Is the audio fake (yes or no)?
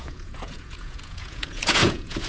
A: yes